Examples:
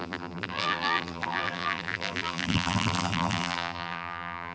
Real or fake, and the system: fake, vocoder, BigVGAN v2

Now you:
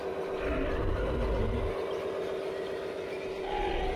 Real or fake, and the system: real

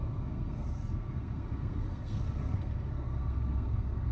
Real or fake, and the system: fake, codec, SNAC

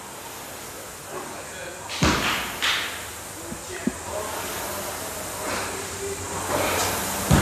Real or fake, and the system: real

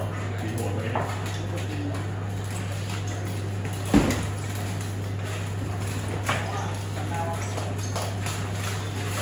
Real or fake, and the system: real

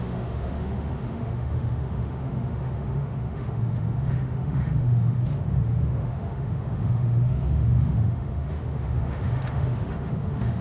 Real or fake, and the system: fake, autoencoder, DAC-VAE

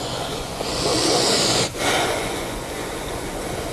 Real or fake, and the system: fake, vocoder, Vocos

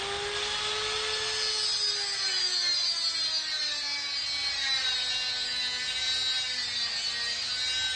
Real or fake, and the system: real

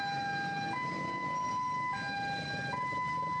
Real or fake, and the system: real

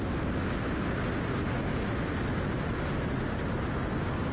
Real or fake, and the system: real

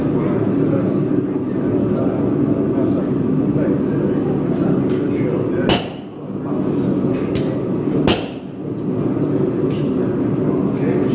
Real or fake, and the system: real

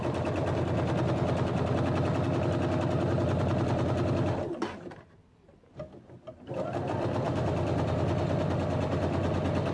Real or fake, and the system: real